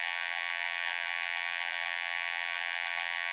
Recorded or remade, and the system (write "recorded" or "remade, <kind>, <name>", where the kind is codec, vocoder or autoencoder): remade, vocoder, BigVGAN v2